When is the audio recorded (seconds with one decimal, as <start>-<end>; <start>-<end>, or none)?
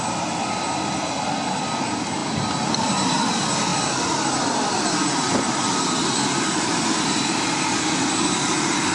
0.0-3.7; 8.1-8.9